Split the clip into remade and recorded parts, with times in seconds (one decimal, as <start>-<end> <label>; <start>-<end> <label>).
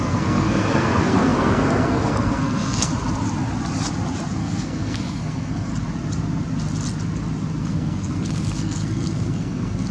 0.0-2.9 remade; 2.9-4.4 recorded; 4.4-5.7 remade; 5.7-7.6 recorded; 7.6-9.9 remade